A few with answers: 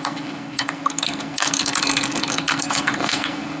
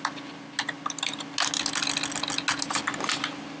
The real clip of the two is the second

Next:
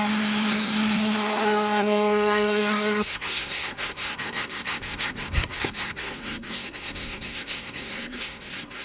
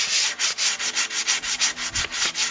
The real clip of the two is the second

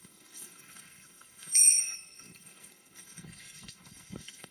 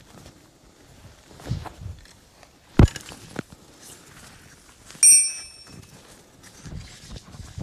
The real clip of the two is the second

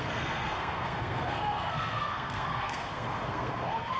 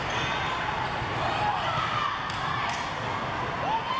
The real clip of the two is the second